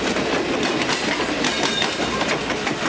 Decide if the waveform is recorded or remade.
recorded